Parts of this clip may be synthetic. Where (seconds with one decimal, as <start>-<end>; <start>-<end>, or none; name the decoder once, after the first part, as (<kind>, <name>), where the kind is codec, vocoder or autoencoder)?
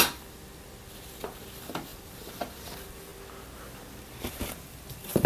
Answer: 0.0-3.1 (vocoder, BigVGAN v2); 4.0-5.3